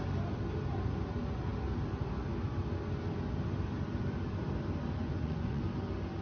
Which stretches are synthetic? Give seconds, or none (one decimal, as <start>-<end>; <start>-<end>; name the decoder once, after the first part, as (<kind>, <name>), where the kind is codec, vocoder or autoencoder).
5.0-5.6 (vocoder, Vocos)